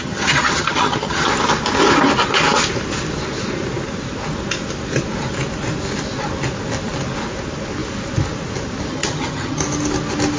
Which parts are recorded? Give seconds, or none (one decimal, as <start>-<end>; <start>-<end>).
1.3-8.9; 9.6-10.4